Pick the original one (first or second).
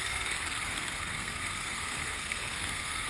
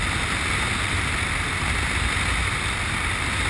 second